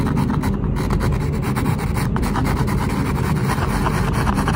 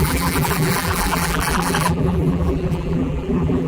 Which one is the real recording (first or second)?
first